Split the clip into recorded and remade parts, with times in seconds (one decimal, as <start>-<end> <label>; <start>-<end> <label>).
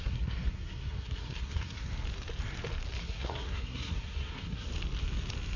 0.0-1.9 remade; 1.9-3.0 recorded; 3.0-4.7 remade; 4.7-5.6 recorded